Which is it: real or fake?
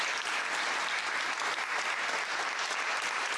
real